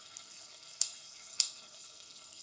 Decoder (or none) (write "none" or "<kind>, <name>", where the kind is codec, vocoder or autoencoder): codec, SNAC